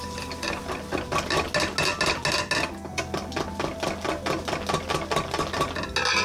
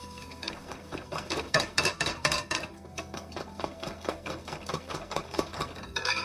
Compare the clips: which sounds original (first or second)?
first